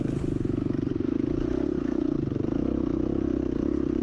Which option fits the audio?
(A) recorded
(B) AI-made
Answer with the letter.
A